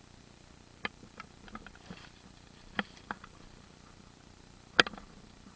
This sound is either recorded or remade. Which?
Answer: remade